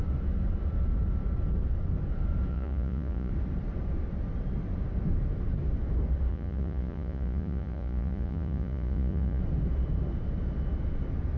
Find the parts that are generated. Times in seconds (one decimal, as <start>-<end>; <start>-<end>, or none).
2.5-3.3; 6.3-9.4